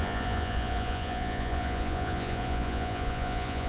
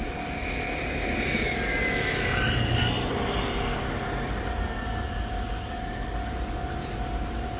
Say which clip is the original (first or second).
second